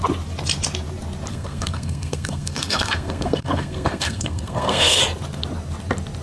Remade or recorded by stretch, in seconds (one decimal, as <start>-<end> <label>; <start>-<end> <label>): 0.0-1.3 recorded; 1.3-5.0 remade; 5.0-6.2 recorded